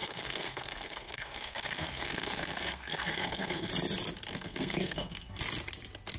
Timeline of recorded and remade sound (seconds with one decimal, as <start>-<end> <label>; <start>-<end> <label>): 0.0-3.7 remade; 3.7-4.3 recorded; 4.3-5.4 remade; 5.4-6.2 recorded